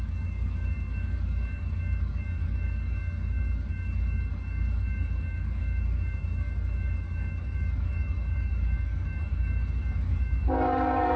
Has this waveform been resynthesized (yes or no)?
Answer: yes